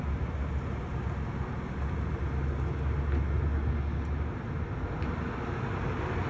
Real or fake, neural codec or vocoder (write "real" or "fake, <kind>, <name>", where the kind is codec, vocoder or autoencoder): real